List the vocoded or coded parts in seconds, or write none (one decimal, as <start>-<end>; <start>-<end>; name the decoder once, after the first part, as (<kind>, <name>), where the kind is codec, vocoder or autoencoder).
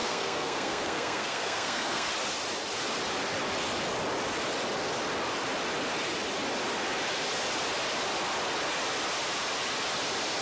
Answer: 0.0-2.1 (codec, SNAC)